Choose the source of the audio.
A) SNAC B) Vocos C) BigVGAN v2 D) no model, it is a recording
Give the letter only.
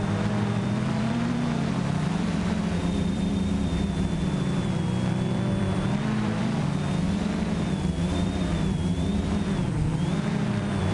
C